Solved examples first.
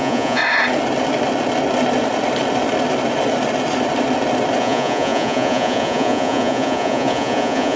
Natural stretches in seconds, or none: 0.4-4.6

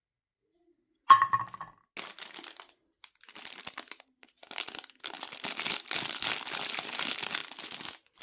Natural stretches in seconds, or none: 0.0-8.2

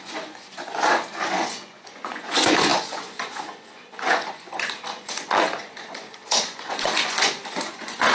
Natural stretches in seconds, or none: none

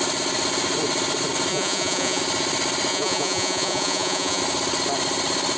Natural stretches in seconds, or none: 0.0-1.5; 2.2-2.9; 4.4-5.6

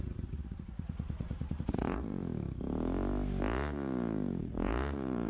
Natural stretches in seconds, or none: 2.2-4.4

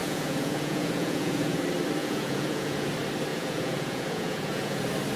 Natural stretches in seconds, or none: 1.6-2.0; 2.9-3.3; 4.8-5.2